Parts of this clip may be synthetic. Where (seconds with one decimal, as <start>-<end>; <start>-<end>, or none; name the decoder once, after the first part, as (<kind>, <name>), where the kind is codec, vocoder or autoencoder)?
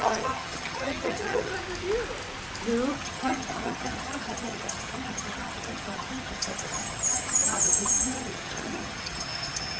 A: 0.0-1.5 (vocoder, HiFi-GAN); 2.9-9.8